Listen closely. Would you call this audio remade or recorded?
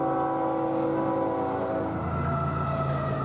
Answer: recorded